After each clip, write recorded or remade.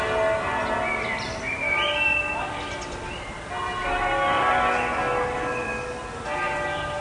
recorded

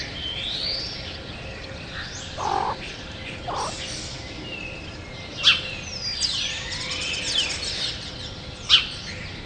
recorded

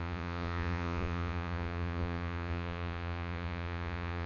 remade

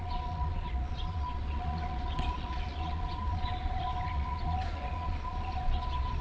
remade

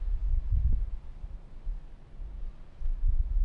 recorded